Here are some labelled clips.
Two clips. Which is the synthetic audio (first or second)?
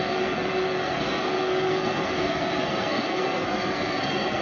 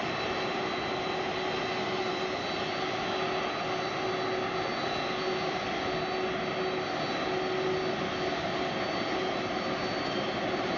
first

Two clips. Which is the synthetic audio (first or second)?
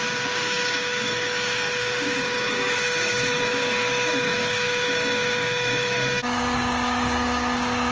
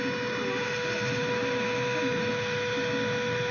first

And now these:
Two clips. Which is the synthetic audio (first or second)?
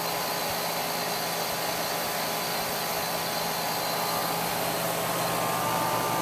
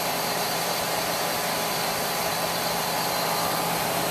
second